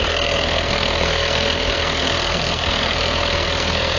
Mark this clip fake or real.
fake